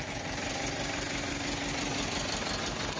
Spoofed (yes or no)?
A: no